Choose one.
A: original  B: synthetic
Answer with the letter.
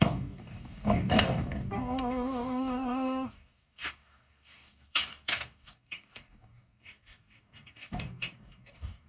B